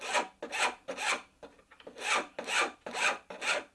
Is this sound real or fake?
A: real